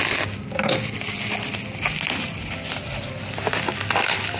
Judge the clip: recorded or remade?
recorded